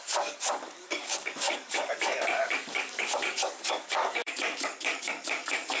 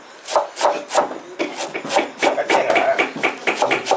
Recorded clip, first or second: second